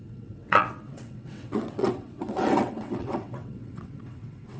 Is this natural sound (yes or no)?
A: no